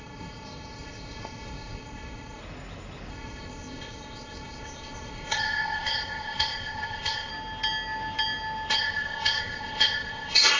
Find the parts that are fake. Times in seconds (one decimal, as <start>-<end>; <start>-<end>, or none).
0.0-2.4; 3.1-7.3; 8.7-10.6